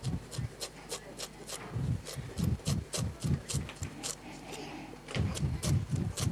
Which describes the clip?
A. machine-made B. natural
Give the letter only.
B